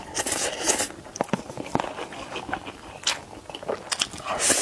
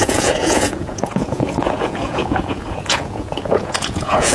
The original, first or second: first